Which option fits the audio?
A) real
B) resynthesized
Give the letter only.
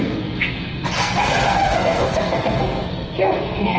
B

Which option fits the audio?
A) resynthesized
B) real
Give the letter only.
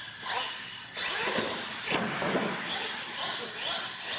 B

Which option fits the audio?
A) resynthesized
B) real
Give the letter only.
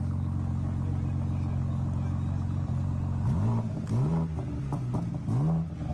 B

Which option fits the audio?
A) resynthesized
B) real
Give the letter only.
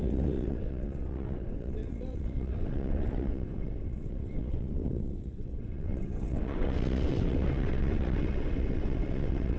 A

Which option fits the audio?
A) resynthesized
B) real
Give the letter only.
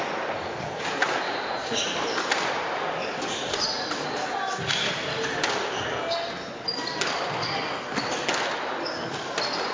B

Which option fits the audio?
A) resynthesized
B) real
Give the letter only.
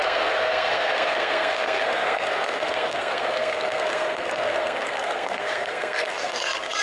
A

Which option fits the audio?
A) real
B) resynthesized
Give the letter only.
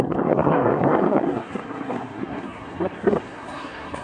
B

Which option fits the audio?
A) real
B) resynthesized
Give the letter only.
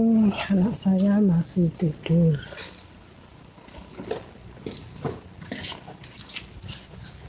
A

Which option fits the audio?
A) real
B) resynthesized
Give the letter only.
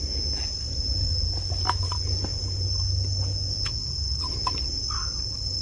A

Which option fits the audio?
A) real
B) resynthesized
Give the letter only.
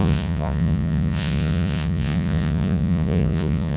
B